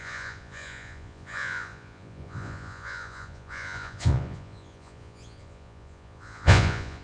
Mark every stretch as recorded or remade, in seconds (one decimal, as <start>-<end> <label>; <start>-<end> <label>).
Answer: 0.0-7.0 remade